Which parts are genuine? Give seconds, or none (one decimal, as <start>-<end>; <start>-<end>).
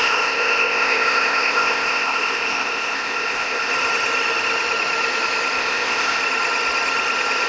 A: 3.7-5.6; 6.2-7.5